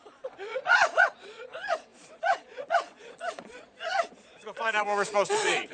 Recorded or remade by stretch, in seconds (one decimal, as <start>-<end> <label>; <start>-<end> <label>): 0.0-5.7 remade